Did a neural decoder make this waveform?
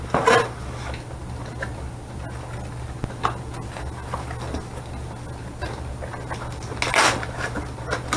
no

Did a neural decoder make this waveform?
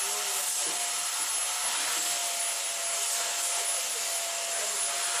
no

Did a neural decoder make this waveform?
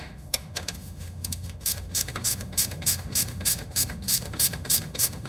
yes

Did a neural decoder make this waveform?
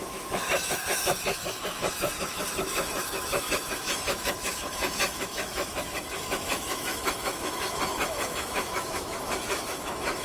yes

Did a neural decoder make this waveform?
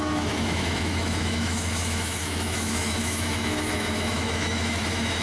yes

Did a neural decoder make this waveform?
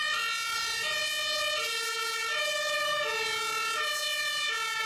no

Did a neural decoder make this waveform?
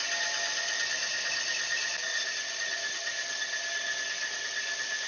no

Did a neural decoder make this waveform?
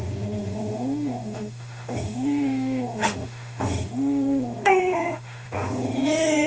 yes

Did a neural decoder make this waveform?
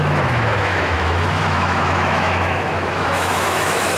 yes